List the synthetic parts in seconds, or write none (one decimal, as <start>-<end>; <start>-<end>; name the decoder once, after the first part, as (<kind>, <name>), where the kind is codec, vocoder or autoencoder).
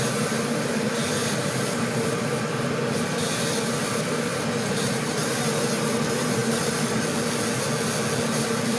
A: none